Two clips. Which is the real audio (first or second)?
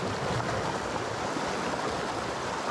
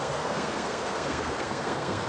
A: first